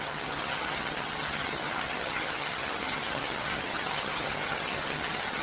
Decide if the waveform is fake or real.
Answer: fake